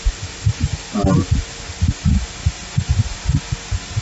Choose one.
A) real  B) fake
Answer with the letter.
A